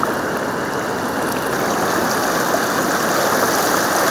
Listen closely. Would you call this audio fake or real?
real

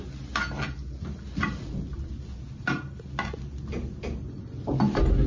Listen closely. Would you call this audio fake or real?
real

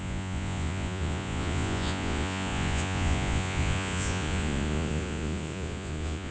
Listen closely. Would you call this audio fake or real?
fake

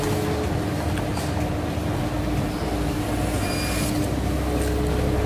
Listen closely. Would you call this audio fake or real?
real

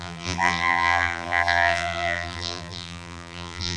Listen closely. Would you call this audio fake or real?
fake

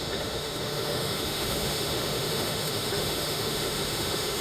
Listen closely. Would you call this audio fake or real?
fake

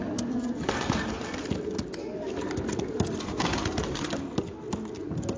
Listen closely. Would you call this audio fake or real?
real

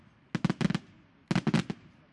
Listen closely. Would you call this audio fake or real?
real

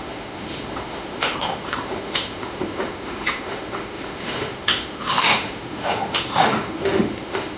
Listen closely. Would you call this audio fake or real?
fake